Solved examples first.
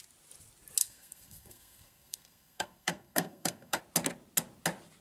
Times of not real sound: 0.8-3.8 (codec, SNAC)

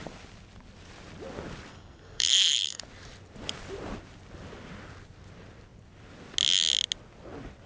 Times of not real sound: 1.7-2.8 (codec, SNAC)

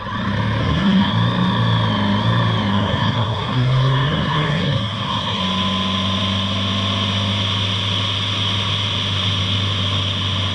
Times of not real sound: 0.6-1.1 (codec, SNAC); 2.7-5.4

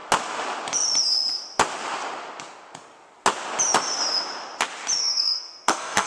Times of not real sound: 5.0-6.1 (codec, SNAC)

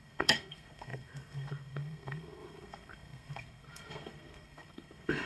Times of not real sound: 0.0-5.3 (codec, SNAC)

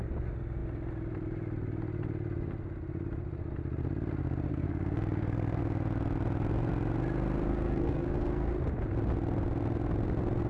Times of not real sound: 4.5-5.6 (codec, SNAC); 7.5-8.5